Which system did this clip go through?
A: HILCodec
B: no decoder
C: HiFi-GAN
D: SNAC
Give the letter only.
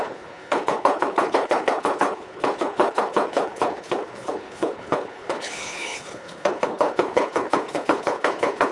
A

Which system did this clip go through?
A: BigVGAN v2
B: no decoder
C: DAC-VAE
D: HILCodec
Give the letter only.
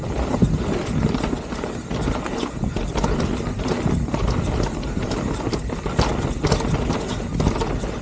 B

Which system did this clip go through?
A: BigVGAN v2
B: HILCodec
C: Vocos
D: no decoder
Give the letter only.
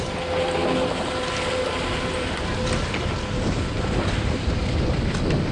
D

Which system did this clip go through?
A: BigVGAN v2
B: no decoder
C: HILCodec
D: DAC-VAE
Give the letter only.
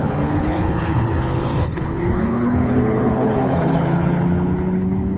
C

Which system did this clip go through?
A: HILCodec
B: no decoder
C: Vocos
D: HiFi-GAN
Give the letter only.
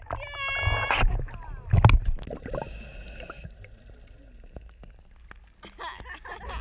B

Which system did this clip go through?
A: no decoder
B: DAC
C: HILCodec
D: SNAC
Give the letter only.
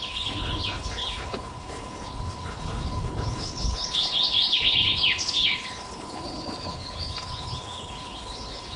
C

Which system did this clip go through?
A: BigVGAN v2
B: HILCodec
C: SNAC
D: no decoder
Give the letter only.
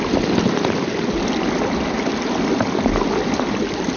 D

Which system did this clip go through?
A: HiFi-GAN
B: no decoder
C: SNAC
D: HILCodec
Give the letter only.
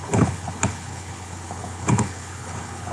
D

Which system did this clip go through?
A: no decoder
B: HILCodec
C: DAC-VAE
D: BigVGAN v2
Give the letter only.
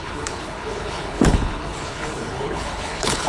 B